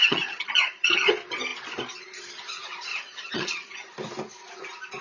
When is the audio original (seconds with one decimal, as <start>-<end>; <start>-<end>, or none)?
1.1-2.9; 3.9-5.0